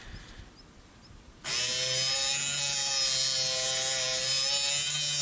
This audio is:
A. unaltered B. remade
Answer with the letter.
A